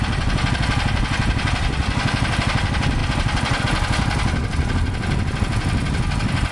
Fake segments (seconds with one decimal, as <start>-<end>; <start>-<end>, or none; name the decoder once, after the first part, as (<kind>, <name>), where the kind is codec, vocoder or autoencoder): 3.0-3.6 (vocoder, BigVGAN v2)